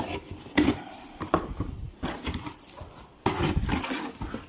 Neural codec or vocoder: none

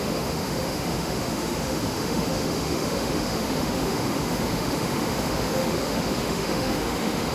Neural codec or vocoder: autoencoder, DAC-VAE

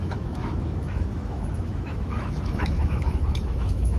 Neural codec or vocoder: autoencoder, DAC-VAE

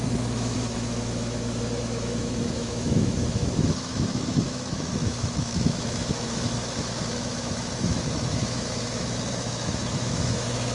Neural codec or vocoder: autoencoder, DAC-VAE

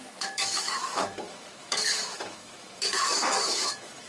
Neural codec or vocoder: autoencoder, DAC-VAE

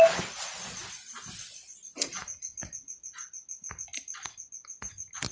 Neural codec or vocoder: none